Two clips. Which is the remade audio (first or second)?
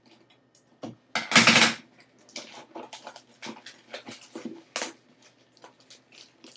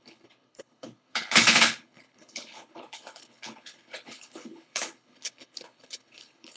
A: second